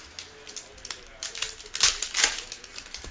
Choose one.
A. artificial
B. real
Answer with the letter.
B